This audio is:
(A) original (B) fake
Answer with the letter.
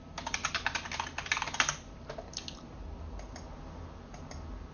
A